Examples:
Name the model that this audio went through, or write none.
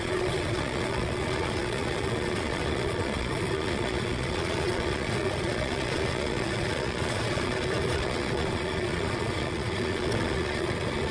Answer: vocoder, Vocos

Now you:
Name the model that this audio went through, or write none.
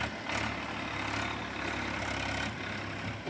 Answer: none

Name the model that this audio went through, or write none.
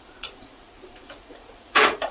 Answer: vocoder, Vocos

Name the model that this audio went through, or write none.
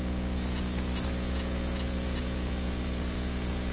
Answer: vocoder, Vocos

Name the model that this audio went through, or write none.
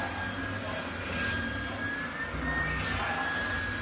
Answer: none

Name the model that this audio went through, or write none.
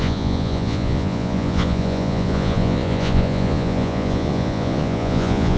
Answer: vocoder, Vocos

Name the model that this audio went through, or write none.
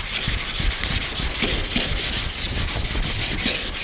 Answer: none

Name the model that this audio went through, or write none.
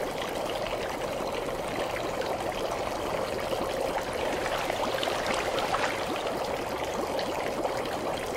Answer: none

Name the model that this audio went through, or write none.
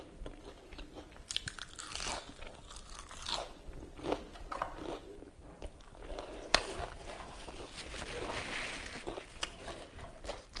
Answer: none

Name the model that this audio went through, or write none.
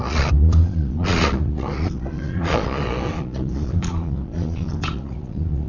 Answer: vocoder, Vocos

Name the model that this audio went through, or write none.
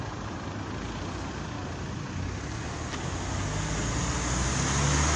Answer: none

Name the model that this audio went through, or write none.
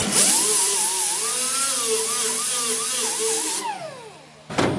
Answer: none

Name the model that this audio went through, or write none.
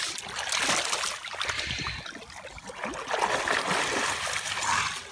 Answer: none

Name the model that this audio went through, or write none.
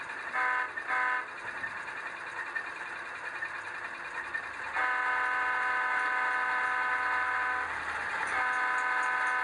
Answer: none